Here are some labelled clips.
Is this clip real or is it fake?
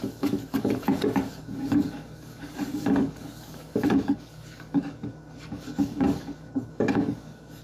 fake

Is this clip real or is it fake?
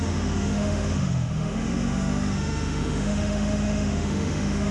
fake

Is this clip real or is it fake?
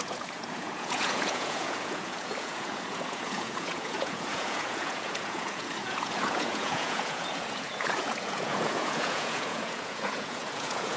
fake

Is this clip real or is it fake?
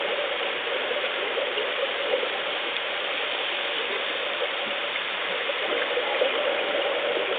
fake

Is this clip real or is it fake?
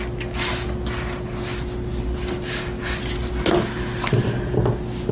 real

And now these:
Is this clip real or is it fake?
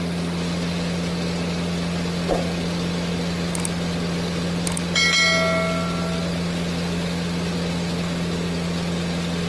real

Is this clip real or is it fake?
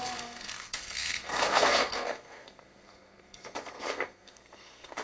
fake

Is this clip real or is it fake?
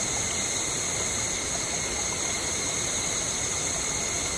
real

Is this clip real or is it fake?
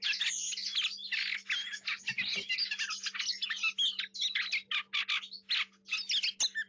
real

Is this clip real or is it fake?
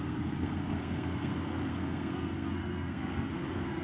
fake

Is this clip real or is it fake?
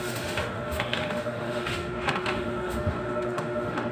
fake